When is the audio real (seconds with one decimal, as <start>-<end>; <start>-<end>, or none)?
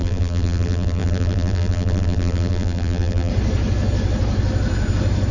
3.3-5.3